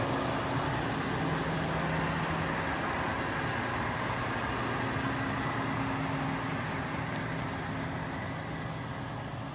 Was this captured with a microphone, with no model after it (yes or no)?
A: yes